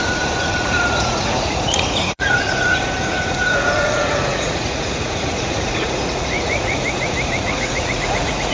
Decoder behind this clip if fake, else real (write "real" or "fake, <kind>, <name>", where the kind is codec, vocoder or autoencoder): fake, vocoder, Vocos